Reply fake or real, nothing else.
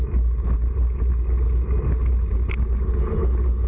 real